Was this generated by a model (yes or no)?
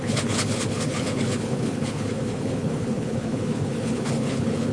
yes